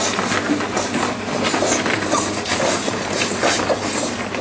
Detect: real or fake real